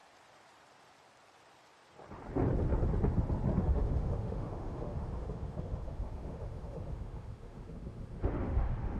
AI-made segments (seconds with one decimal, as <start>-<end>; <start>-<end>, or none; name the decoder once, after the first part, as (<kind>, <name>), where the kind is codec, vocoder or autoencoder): 3.6-9.0 (autoencoder, DAC-VAE)